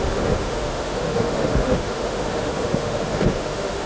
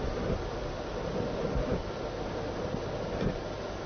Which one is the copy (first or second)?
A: first